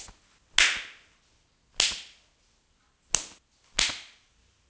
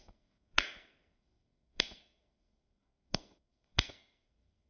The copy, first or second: second